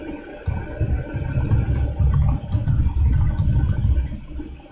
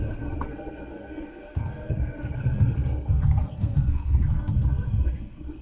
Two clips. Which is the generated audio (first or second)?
second